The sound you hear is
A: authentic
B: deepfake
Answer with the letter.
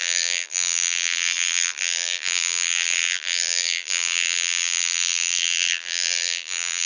B